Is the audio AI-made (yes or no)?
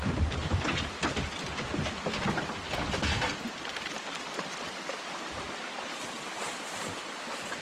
yes